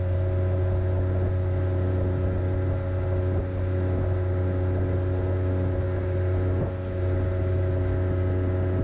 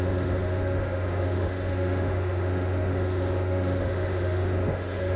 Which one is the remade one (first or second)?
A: second